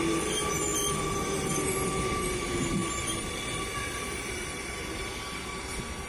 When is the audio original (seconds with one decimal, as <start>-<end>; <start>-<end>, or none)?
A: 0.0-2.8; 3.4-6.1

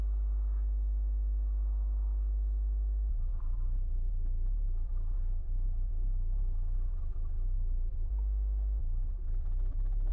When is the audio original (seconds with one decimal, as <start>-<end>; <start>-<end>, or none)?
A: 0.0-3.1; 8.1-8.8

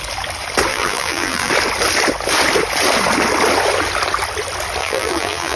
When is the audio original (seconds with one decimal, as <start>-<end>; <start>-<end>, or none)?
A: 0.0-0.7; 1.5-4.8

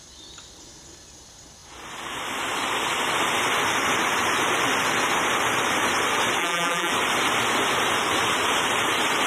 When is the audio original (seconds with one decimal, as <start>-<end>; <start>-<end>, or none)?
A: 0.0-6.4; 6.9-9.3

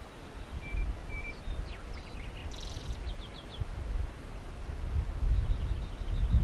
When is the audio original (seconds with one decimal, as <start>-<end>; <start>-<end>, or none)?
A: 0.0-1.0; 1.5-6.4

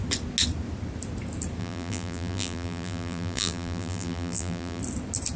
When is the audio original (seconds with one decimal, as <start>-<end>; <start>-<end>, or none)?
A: 0.0-1.6; 4.8-5.4

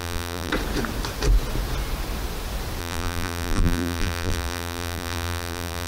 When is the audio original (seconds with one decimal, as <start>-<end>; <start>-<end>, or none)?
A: 0.5-2.8

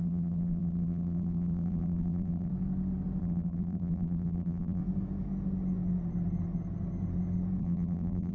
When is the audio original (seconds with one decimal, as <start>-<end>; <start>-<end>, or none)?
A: 2.5-3.2; 4.8-7.6